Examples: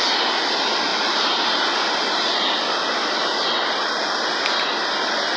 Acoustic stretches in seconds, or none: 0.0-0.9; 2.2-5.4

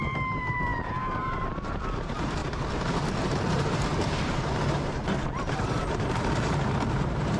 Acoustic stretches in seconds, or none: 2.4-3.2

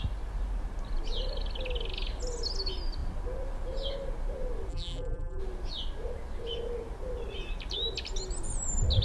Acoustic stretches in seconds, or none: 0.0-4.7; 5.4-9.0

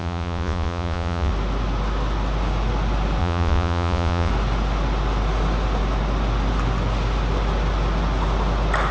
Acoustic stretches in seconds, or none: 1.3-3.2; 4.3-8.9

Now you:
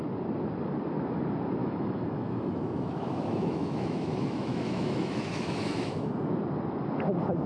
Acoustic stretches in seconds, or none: 0.0-1.6; 6.1-7.5

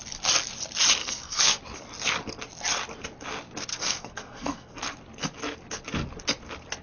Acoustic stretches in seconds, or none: 0.0-1.0; 1.6-3.7; 4.8-6.8

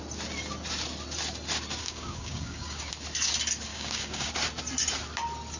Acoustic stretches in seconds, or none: 0.0-1.8; 2.9-3.7; 4.3-5.6